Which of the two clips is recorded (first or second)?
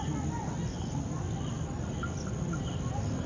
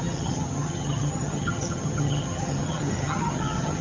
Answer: first